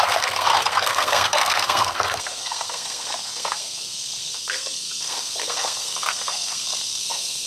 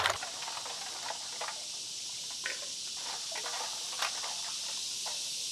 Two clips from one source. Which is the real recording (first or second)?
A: second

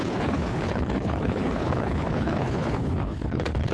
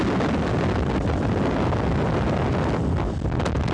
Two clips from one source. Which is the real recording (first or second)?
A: second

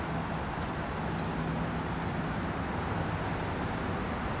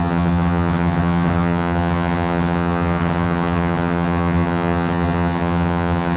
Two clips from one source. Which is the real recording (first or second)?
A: first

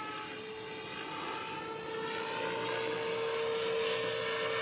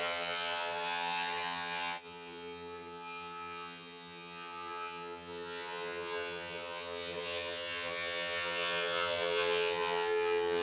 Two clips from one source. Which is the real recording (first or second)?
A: first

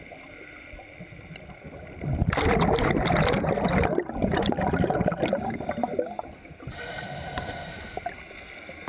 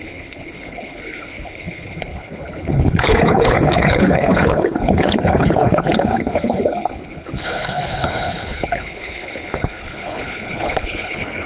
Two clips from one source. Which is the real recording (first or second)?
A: first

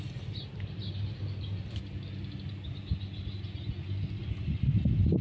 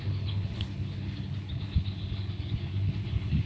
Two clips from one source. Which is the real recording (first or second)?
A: first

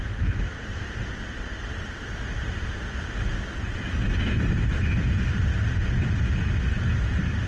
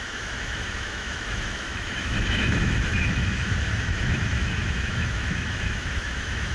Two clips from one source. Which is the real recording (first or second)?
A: first